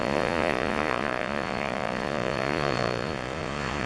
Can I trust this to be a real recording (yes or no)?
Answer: no